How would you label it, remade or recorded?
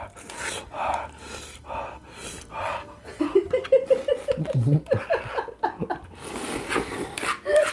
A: recorded